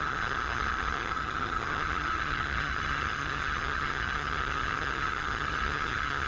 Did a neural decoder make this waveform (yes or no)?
yes